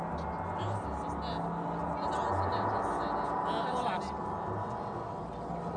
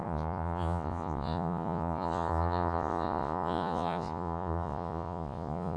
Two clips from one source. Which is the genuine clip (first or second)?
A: first